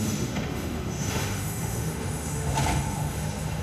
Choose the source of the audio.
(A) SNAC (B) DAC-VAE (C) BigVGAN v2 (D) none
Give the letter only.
B